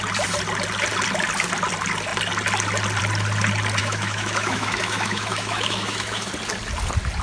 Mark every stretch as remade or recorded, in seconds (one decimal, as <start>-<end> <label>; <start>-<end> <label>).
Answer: 0.0-3.8 recorded; 3.8-6.3 remade; 6.3-7.2 recorded